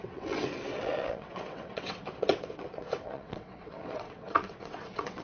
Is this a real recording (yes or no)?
no